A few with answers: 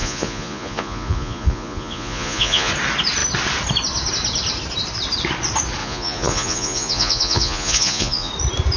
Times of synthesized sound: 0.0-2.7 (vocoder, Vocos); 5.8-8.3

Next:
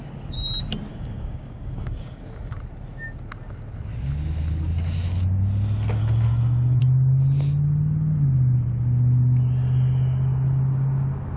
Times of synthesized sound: 0.9-2.2 (codec, DAC); 6.0-6.8

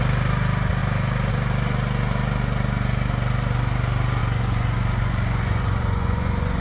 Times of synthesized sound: 4.2-6.6 (vocoder, Vocos)

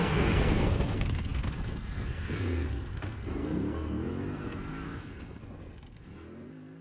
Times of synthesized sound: 0.0-6.8 (codec, SNAC)

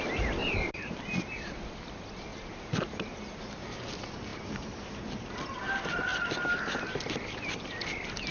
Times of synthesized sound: 0.4-1.0 (vocoder, BigVGAN v2); 2.3-3.6; 4.3-5.3